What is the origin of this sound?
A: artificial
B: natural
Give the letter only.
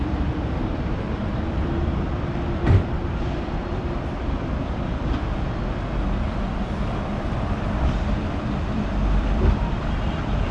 A